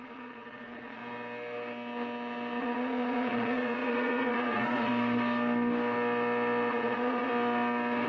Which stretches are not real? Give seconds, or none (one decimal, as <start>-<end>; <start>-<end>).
0.0-1.0; 2.6-4.9; 6.7-7.3

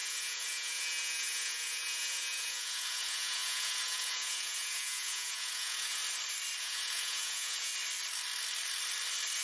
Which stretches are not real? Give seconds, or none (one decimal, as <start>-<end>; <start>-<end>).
0.0-6.0; 6.6-7.7

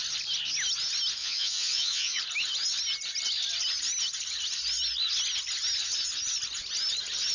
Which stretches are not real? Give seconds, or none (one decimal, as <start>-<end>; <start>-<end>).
1.2-2.2